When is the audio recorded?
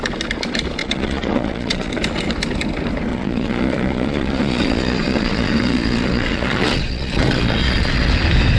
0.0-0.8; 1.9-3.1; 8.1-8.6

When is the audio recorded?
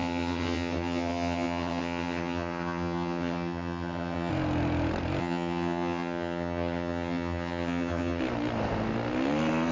4.3-5.2; 8.2-9.7